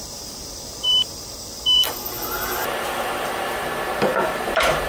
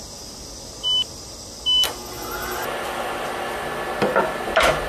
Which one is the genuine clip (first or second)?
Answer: second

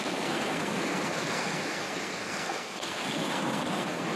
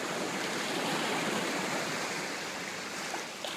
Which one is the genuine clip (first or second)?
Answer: second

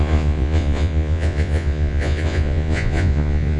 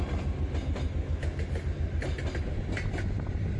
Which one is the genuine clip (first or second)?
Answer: second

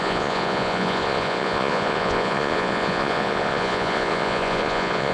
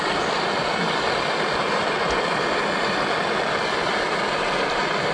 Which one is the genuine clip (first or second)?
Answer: second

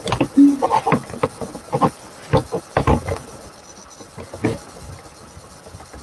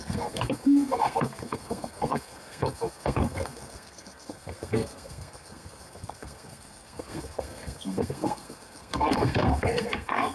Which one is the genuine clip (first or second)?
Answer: first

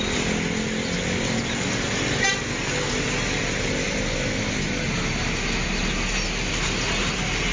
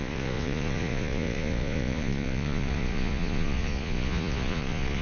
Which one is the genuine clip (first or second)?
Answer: first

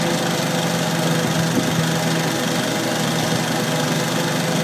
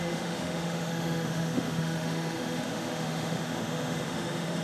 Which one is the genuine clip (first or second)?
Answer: first